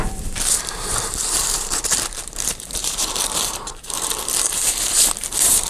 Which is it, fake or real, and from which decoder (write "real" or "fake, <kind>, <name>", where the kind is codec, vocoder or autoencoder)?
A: fake, vocoder, BigVGAN v2